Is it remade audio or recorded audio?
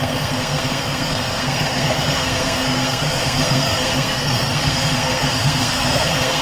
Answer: remade